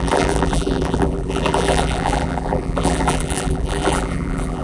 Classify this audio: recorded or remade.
remade